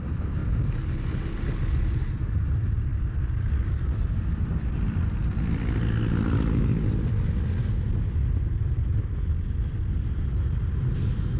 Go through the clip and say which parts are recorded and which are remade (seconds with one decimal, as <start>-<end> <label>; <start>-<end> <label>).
0.0-11.4 recorded